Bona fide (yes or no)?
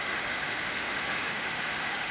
no